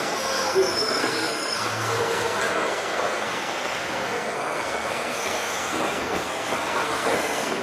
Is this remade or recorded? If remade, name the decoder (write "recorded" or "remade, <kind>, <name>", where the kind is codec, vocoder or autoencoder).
remade, codec, SNAC